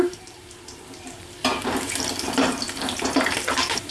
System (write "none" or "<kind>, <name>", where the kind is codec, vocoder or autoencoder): vocoder, BigVGAN v2